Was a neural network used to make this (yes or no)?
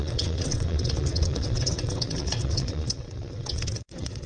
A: yes